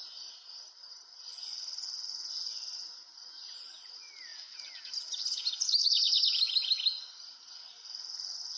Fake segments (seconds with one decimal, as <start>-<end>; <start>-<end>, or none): none